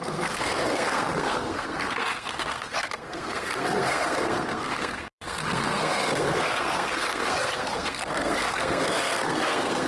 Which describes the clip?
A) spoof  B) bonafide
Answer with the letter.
A